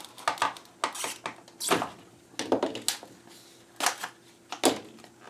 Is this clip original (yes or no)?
yes